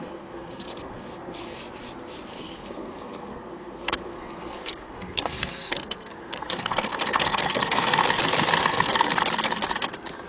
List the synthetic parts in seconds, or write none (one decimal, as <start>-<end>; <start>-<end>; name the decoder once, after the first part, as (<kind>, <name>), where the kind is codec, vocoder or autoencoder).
0.0-1.6 (codec, SNAC); 2.3-8.0; 8.6-9.2